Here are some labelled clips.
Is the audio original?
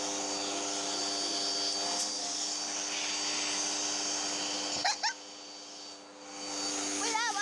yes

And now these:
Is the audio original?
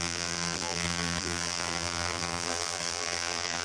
no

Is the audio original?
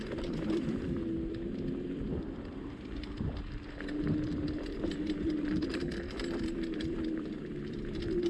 no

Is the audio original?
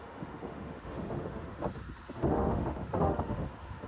no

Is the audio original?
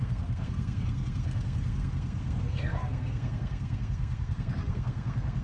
no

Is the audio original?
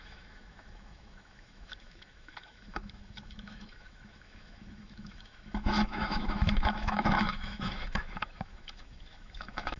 no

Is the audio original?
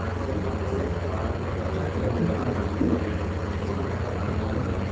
yes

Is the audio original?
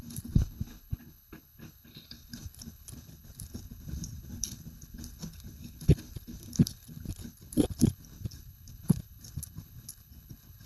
no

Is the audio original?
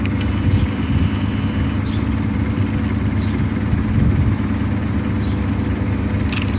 yes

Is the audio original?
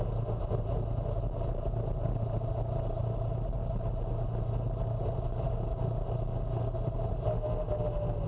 yes